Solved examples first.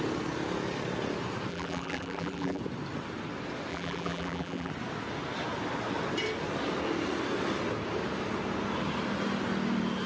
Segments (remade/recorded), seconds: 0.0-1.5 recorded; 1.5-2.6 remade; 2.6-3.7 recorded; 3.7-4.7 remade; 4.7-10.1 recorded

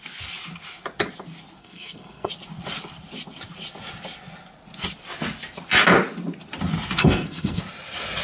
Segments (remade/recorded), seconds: 0.0-1.6 recorded; 1.6-2.3 remade; 2.3-7.0 recorded; 7.0-7.6 remade; 7.6-8.2 recorded

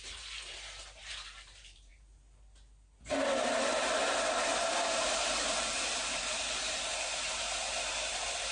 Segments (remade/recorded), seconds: 0.0-1.9 remade; 1.9-3.3 recorded; 3.3-8.5 remade

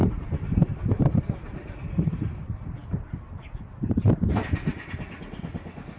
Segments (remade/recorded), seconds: 0.0-6.0 recorded

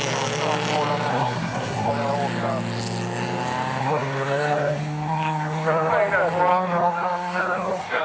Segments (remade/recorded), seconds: 0.0-1.1 recorded; 1.1-1.9 remade; 1.9-3.8 recorded; 3.8-5.9 remade; 5.9-6.5 recorded; 6.5-8.0 remade

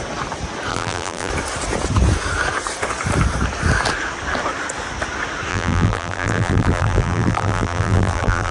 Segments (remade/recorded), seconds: 0.0-0.7 recorded; 0.7-1.3 remade; 1.3-5.5 recorded; 5.5-8.5 remade

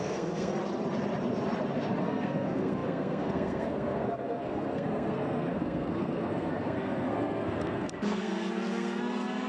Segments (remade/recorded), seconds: 0.0-0.5 remade; 0.5-2.0 recorded; 2.0-9.5 remade